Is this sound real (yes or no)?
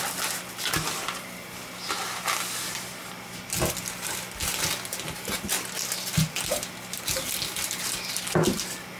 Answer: yes